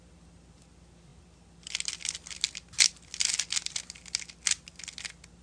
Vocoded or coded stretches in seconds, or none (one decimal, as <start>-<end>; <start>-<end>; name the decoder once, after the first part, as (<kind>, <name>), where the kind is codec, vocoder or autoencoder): none